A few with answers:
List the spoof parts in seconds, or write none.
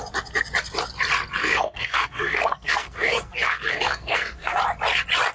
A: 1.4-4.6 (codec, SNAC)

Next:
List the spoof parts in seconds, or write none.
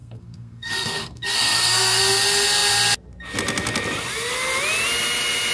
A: 0.0-2.0 (codec, SNAC)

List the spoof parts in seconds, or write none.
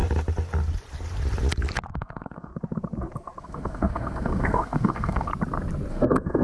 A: 1.9-2.5 (codec, SNAC); 3.4-5.3; 5.9-6.4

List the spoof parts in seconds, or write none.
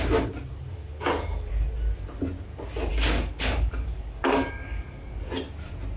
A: 0.7-1.5 (codec, DAC); 2.9-5.1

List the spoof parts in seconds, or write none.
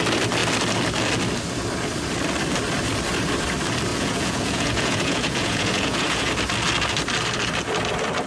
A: 3.9-6.3 (vocoder, Vocos)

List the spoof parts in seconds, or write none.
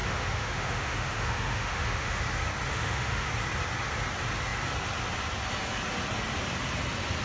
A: 0.0-2.2 (autoencoder, DAC-VAE); 2.7-3.3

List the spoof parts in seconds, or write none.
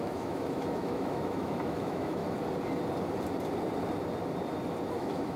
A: 0.0-2.2 (autoencoder, DAC-VAE); 4.9-5.4